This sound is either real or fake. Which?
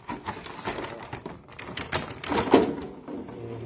real